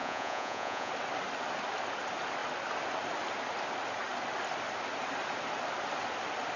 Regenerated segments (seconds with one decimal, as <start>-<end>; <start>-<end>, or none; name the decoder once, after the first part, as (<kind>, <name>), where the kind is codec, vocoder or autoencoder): 0.0-0.9 (vocoder, Vocos)